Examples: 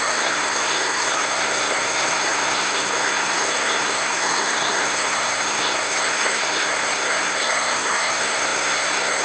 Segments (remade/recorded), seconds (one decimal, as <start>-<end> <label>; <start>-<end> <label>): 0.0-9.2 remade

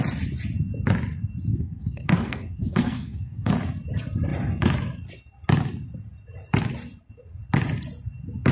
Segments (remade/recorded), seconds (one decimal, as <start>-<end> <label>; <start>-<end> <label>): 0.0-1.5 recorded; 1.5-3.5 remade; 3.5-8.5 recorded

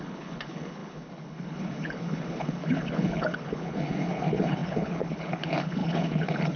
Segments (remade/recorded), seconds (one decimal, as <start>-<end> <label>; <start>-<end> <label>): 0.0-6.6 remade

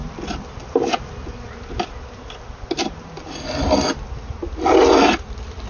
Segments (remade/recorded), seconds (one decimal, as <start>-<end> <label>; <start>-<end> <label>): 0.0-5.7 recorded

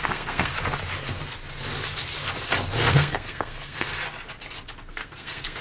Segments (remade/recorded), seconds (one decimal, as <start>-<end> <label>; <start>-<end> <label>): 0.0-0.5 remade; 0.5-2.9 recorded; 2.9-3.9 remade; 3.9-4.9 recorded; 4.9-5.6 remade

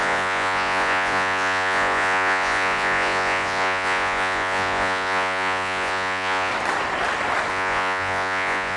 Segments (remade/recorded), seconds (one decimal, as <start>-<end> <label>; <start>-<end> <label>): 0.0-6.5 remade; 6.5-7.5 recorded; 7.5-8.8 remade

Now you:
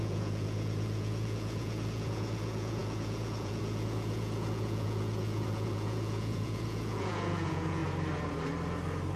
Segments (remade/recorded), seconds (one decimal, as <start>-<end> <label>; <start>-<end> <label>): 0.0-7.8 remade; 7.8-9.2 recorded